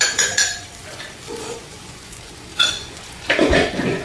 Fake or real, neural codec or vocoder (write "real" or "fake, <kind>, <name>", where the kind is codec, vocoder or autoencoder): fake, vocoder, Vocos